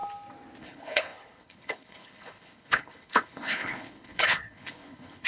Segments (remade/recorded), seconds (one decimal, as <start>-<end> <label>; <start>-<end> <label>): 0.0-0.6 recorded; 0.6-5.3 remade